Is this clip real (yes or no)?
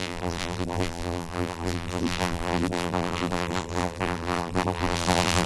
no